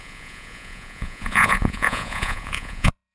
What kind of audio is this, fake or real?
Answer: fake